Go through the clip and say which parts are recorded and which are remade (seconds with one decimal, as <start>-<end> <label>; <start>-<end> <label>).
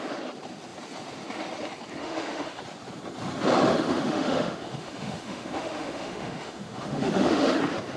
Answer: 0.0-2.0 recorded; 2.0-2.6 remade; 2.6-3.7 recorded; 3.7-7.6 remade; 7.6-8.0 recorded